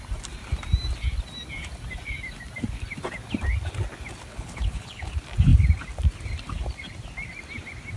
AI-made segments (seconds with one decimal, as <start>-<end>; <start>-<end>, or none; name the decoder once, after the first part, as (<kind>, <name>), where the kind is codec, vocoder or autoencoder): 4.3-5.1 (codec, HILCodec)